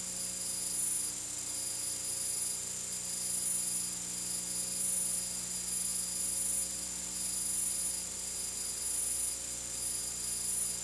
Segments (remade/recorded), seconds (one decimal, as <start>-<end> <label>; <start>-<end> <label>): 0.0-10.8 recorded